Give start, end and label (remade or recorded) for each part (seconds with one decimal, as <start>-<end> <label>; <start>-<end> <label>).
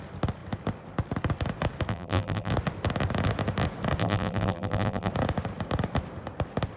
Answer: 0.0-1.9 recorded; 1.9-2.5 remade; 2.5-4.0 recorded; 4.0-5.1 remade; 5.1-6.8 recorded